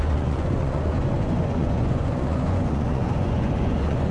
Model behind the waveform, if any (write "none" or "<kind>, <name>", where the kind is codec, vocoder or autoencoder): vocoder, Vocos